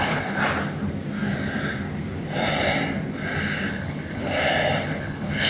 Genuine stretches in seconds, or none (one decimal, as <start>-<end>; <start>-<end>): 0.4-3.7; 4.3-4.8